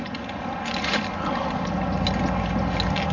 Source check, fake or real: real